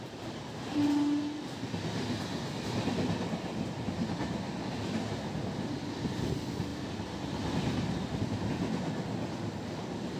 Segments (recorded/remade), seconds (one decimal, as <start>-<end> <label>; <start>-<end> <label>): 0.0-10.2 recorded